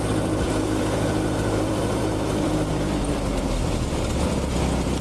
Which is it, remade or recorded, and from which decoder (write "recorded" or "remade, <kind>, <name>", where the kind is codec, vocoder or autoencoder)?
remade, vocoder, BigVGAN v2